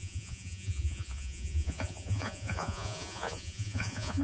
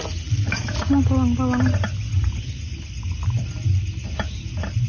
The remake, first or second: first